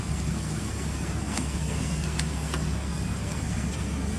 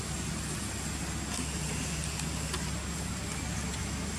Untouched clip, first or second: second